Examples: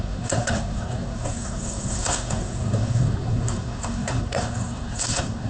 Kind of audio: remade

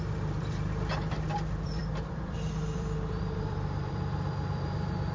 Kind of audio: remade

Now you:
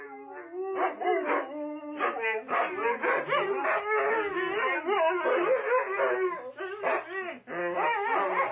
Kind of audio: recorded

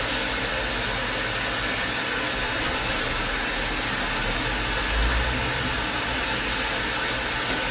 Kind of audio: recorded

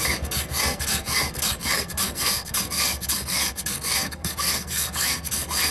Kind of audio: remade